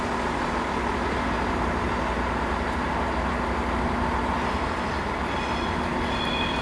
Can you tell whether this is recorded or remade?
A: recorded